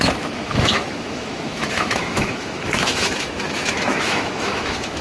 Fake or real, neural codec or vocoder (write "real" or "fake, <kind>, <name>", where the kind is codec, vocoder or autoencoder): fake, autoencoder, DAC-VAE